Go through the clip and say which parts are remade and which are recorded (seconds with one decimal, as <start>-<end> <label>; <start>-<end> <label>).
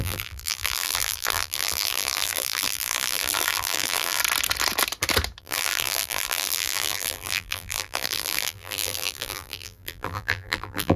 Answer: 0.0-4.2 remade; 4.2-5.4 recorded; 5.4-11.0 remade